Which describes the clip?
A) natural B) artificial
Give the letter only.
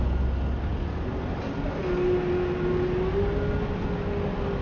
A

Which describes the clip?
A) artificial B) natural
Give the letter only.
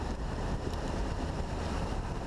A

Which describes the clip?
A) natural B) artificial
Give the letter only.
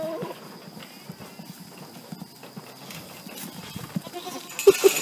A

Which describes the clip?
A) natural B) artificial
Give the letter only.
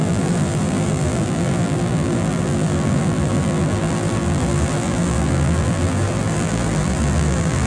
B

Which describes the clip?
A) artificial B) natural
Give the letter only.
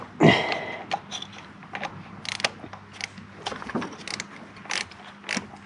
B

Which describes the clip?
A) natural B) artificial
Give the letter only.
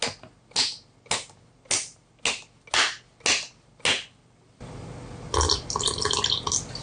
A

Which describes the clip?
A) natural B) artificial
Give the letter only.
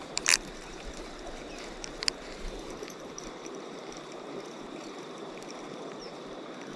B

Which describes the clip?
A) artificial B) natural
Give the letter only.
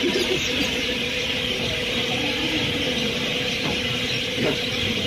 A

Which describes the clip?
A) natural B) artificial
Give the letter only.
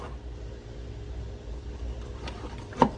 A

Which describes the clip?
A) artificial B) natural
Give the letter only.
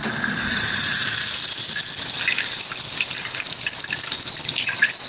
B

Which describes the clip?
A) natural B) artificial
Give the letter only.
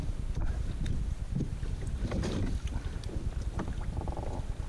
A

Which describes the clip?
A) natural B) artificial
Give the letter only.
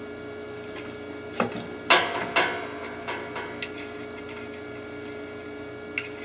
A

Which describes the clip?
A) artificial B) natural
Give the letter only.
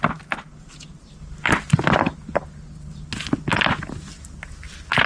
B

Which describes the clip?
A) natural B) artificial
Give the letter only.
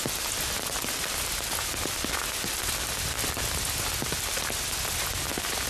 A